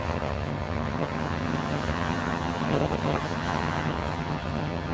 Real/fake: fake